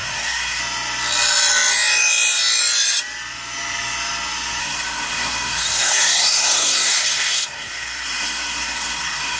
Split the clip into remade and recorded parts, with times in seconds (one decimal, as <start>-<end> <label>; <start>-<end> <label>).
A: 0.0-0.6 remade; 0.6-4.6 recorded; 4.6-9.4 remade

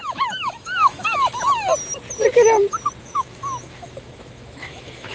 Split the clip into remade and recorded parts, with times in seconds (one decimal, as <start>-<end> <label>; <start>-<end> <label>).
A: 0.0-1.7 remade; 1.7-3.0 recorded; 3.0-5.1 remade

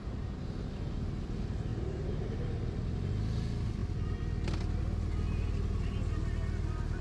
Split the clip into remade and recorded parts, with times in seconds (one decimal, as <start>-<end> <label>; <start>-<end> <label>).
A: 0.0-0.5 remade; 0.5-1.7 recorded; 1.7-2.5 remade; 2.5-7.0 recorded

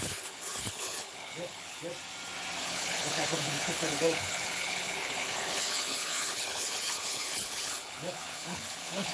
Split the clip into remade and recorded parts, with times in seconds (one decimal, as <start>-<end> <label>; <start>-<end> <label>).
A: 0.0-1.9 remade; 1.9-2.6 recorded; 2.6-9.1 remade

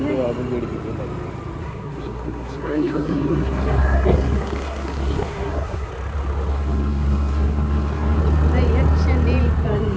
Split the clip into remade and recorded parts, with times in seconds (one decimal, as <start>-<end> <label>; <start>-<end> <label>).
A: 0.0-1.6 recorded; 1.6-5.9 remade; 5.9-6.5 recorded; 6.5-8.2 remade; 8.2-10.0 recorded

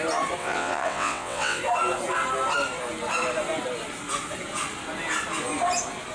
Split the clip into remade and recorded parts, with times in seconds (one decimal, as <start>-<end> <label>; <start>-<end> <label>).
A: 0.0-0.4 recorded; 0.4-1.6 remade; 1.6-6.1 recorded

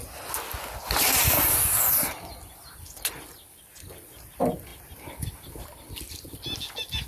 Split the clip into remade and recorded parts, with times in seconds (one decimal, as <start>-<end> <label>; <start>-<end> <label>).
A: 0.0-7.1 recorded

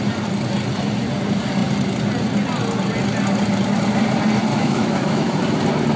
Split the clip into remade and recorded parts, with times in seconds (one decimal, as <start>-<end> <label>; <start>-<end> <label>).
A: 0.0-4.5 recorded; 4.5-5.4 remade; 5.4-6.0 recorded